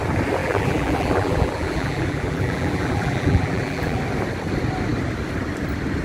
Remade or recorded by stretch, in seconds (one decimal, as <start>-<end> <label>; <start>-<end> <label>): 0.0-0.4 recorded; 0.4-4.0 remade; 4.0-6.0 recorded